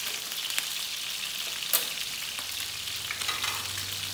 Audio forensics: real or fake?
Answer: real